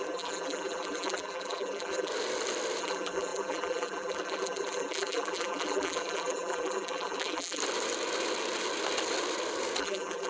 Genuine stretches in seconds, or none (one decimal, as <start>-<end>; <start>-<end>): 2.1-2.8; 7.6-9.8